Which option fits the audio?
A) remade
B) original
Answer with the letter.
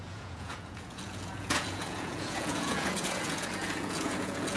A